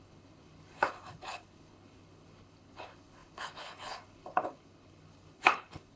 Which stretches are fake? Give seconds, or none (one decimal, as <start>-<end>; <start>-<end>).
0.0-6.0